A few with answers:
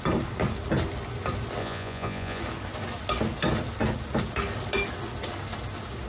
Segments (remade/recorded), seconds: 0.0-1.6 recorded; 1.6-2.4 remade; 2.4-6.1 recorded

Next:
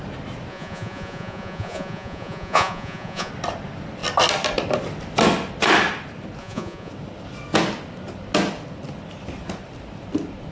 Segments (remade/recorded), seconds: 0.0-0.5 recorded; 0.5-3.3 remade; 3.3-6.4 recorded; 6.4-6.9 remade; 6.9-10.5 recorded

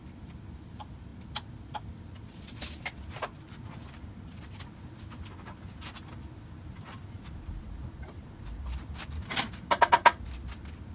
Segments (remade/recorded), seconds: 0.0-10.9 recorded

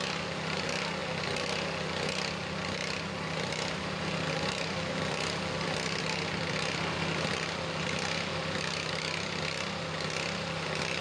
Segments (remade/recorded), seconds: 0.0-11.0 recorded

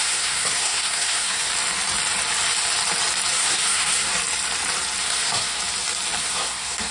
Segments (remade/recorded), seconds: 0.0-1.5 remade; 1.5-3.3 recorded; 3.3-4.1 remade; 4.1-5.0 recorded; 5.0-5.6 remade; 5.6-6.2 recorded; 6.2-6.9 remade